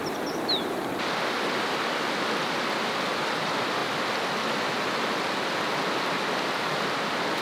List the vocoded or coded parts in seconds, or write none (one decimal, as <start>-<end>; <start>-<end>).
none